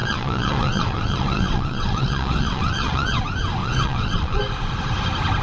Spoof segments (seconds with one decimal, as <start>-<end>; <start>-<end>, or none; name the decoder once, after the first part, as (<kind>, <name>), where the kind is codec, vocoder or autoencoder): 0.0-3.2 (vocoder, WaveNeXt); 3.6-4.4